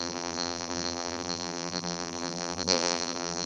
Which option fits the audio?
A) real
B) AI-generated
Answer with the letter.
B